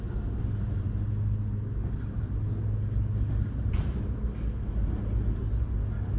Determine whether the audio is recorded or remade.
recorded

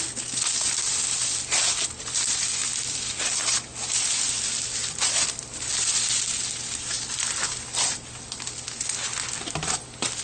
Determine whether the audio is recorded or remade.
recorded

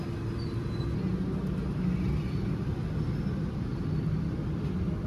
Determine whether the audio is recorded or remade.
recorded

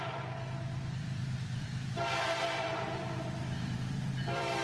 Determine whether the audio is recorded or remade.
remade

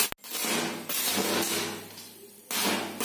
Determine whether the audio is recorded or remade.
recorded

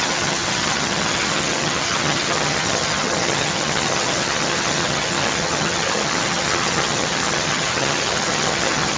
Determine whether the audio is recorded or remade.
remade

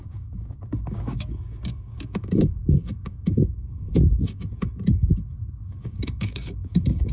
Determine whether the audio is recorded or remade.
remade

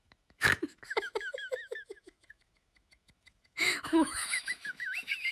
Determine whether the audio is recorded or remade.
remade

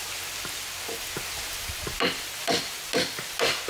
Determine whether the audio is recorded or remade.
recorded